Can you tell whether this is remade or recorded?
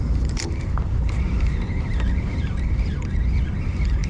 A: remade